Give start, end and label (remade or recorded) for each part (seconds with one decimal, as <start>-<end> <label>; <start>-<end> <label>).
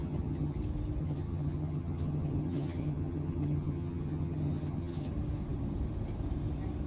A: 0.0-0.6 remade; 0.6-1.0 recorded; 1.0-5.1 remade; 5.1-6.9 recorded